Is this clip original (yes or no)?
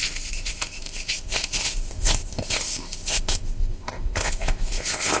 no